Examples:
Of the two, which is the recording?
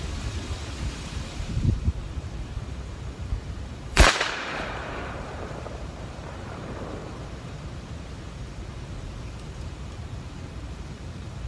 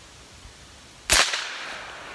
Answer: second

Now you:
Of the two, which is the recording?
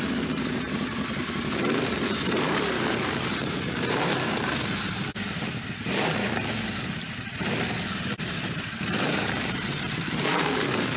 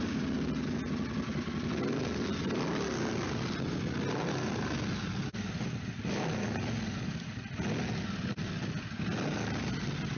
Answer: second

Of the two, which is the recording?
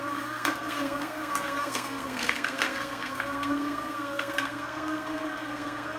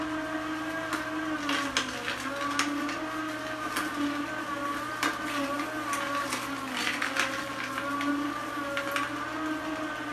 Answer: second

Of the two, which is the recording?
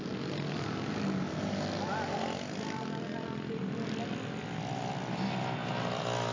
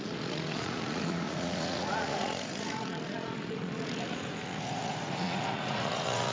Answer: first